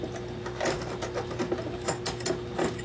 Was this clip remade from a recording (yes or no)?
no